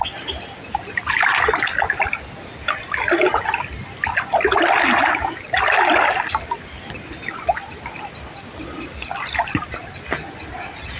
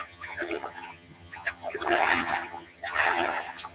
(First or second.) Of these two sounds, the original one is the first